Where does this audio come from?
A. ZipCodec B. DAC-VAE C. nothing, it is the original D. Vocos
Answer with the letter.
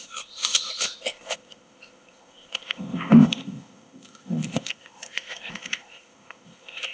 A